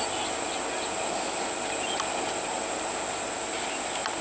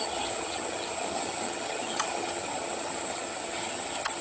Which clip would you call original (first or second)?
first